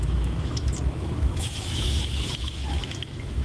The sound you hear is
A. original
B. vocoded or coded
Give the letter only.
B